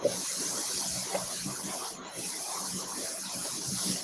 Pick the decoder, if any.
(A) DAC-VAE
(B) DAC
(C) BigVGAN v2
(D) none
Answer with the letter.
C